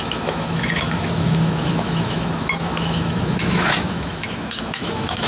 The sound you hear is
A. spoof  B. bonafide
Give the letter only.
A